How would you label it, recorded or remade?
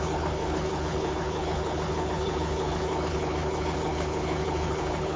remade